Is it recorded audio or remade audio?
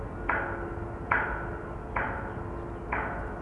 recorded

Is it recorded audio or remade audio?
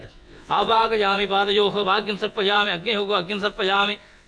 remade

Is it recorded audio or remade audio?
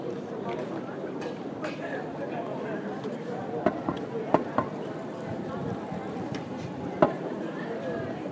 remade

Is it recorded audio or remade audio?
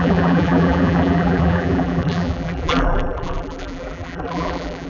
remade